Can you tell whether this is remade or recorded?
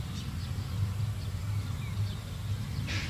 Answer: recorded